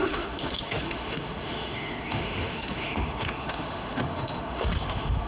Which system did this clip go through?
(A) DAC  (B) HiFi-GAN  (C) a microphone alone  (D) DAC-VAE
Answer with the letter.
D